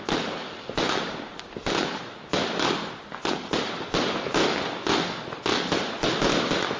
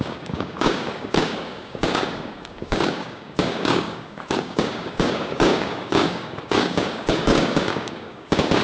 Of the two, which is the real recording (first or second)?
first